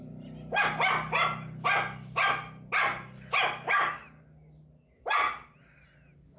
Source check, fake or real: real